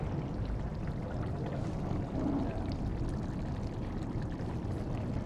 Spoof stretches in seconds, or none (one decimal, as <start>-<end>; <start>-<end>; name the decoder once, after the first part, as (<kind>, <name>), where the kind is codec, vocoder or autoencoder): 0.0-2.9 (vocoder, BigVGAN v2); 4.1-5.3